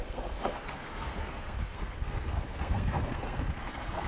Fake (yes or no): yes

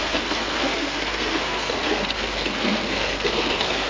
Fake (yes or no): yes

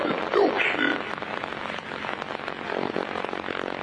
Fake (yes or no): yes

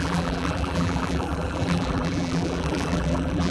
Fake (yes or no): yes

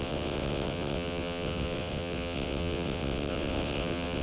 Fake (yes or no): yes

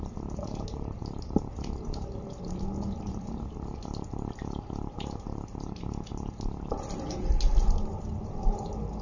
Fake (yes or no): no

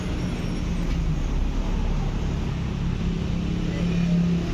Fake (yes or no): no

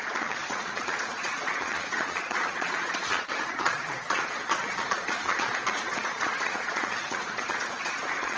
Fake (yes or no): yes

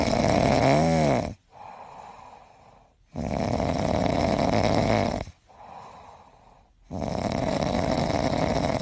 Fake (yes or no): no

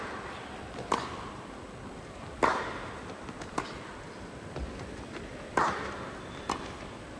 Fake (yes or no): no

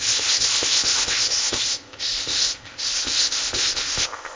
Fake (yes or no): yes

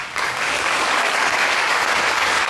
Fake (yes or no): yes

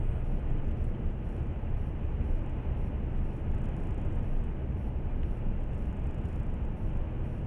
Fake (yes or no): no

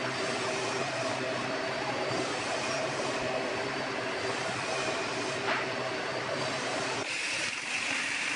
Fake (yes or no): yes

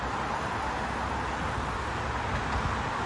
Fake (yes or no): no